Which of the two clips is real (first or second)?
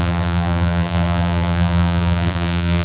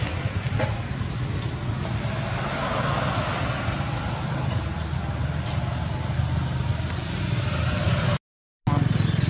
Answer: second